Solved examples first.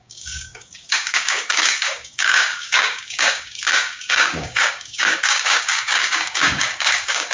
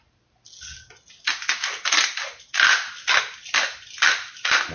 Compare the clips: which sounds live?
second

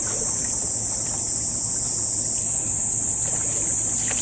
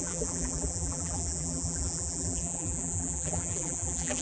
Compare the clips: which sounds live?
first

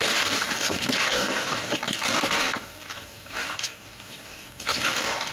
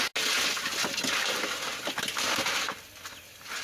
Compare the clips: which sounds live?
second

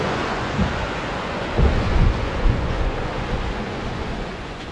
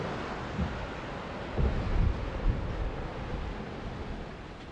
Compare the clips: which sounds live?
second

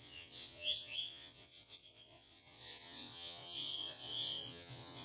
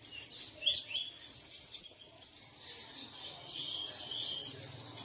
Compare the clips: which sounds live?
second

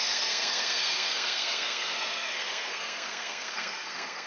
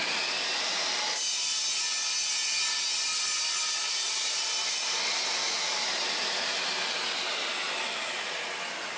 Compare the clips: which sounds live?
second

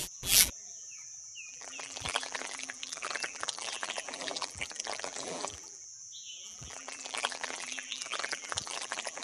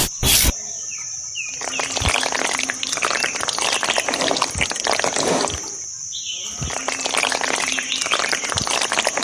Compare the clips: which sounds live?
second